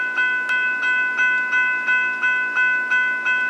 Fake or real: real